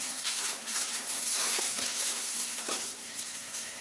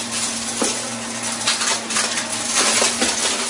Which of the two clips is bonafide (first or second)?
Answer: second